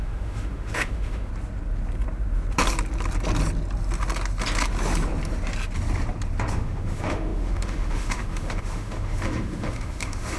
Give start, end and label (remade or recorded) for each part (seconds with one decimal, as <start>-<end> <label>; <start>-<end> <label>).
0.0-1.3 remade; 1.3-6.5 recorded; 6.5-10.4 remade